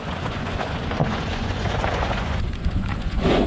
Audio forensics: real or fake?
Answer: fake